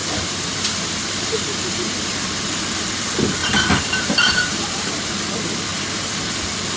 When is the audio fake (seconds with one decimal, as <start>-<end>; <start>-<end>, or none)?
0.0-2.1; 3.4-4.6